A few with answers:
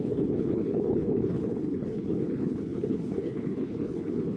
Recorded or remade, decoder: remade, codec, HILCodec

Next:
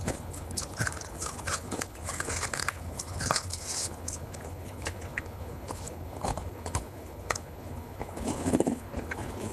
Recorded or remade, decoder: remade, codec, HILCodec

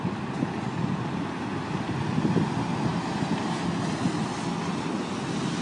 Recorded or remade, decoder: recorded